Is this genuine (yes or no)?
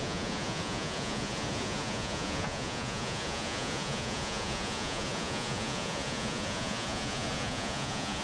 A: no